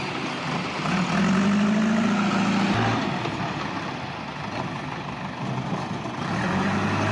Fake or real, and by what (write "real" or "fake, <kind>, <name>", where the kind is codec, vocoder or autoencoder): real